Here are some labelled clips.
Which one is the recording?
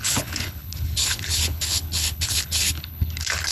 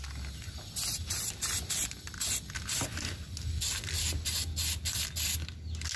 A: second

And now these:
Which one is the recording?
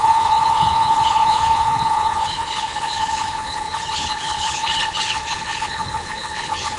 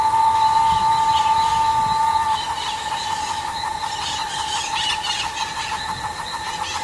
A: second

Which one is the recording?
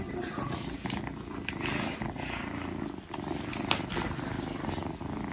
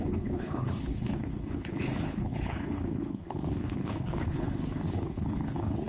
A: first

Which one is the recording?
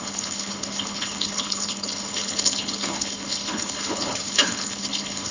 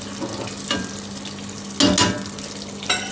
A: second